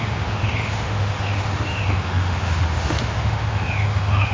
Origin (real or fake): fake